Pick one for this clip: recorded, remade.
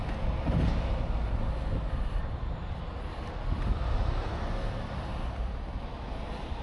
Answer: recorded